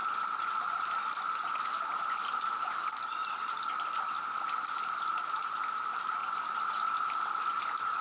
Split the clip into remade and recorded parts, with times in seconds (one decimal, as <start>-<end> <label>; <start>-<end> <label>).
0.0-3.2 recorded; 3.2-4.8 remade; 4.8-8.0 recorded